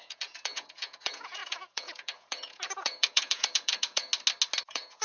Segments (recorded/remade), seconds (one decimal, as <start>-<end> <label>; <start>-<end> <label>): 0.0-4.1 remade; 4.1-4.6 recorded; 4.6-5.0 remade